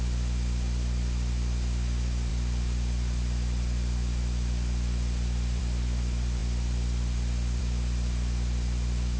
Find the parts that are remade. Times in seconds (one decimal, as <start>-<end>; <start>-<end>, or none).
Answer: none